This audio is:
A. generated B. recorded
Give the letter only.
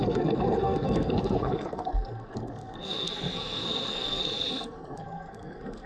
A